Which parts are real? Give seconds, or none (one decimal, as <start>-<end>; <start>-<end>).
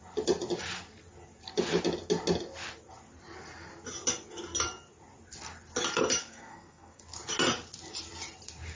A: 0.0-6.2; 7.0-8.8